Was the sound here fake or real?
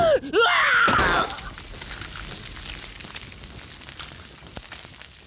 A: real